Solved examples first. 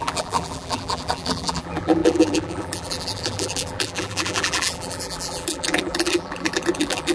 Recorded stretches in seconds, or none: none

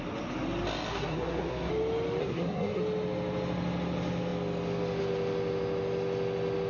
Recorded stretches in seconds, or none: 0.0-0.9; 1.7-2.2; 2.8-6.7

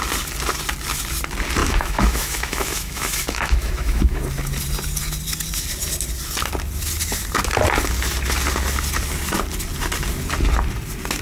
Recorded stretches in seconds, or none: 0.0-1.6; 4.2-11.2

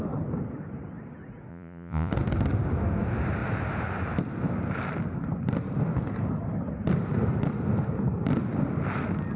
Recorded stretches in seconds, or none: 0.0-1.5; 2.1-9.4